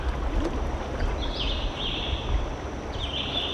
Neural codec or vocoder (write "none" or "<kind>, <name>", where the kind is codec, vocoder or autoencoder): none